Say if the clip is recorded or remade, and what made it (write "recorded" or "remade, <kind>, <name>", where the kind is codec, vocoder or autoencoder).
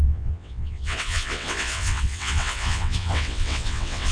remade, vocoder, WaveNeXt